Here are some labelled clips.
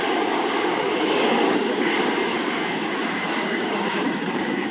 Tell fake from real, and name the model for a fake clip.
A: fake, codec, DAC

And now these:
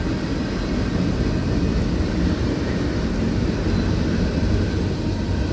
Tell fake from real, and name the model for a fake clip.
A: real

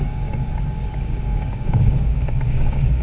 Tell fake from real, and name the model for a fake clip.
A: fake, codec, DAC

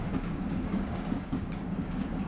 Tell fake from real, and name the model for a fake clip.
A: fake, codec, DAC